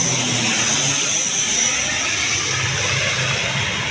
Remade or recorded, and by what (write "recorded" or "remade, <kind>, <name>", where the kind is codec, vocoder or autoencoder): recorded